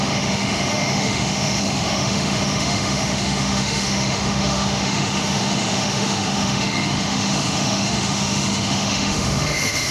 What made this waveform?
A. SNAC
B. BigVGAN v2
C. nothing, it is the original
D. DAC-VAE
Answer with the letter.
D